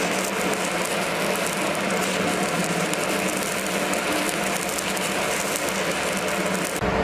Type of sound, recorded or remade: recorded